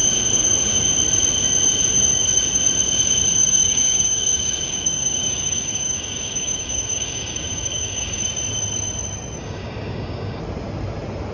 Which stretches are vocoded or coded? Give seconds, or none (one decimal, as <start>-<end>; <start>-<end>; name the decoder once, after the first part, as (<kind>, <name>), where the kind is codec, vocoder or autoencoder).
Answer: 3.6-8.2 (codec, DAC); 9.4-10.4